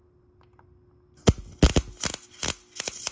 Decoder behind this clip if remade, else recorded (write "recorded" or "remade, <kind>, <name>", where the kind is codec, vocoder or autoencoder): recorded